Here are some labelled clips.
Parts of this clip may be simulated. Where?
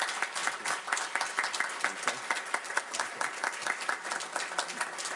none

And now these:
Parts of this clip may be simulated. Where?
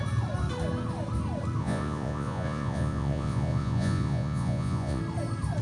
1.6-5.0 (vocoder, Vocos)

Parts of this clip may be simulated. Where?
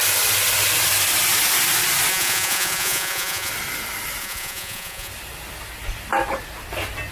2.1-3.5 (vocoder, Vocos); 4.2-5.1